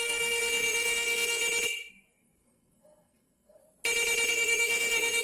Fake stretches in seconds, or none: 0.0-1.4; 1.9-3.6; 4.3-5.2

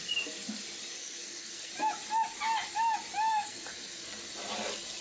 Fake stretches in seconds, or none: 1.0-1.7; 3.3-4.2

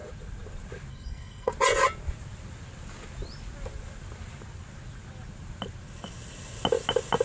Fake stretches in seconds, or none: 0.9-1.5